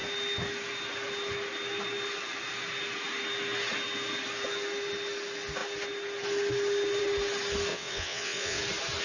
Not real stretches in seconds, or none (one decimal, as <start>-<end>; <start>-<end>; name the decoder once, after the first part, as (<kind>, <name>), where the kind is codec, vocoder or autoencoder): 7.7-8.6 (vocoder, WaveNeXt)